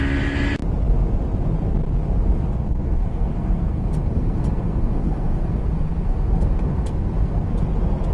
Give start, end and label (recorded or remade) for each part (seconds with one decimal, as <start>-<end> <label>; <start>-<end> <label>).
0.0-2.6 recorded; 2.6-7.5 remade; 7.5-8.1 recorded